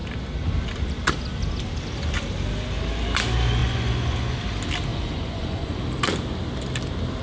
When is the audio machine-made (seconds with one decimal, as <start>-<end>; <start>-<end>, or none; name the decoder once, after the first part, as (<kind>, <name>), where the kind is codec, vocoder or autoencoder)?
3.6-4.4 (vocoder, Vocos); 4.9-5.8